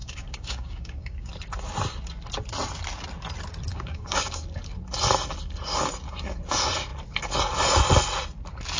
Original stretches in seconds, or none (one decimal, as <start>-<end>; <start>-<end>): 1.3-3.7; 4.4-8.8